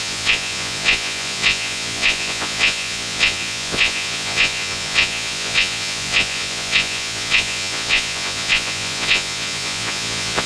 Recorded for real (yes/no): no